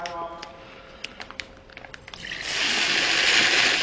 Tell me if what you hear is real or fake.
real